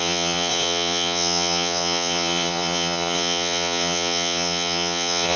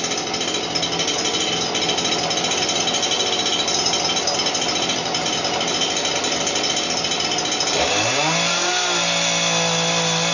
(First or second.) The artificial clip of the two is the first